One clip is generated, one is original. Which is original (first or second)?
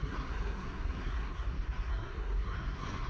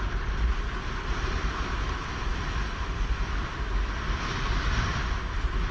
second